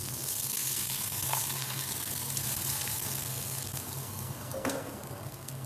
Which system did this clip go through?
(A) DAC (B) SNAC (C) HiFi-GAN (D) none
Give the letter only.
B